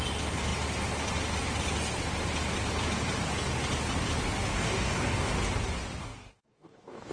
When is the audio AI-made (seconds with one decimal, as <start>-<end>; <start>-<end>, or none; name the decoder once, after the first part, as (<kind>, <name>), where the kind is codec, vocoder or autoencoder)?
4.5-5.3 (codec, DAC); 6.0-7.1